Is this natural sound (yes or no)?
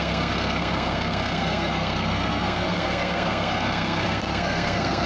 no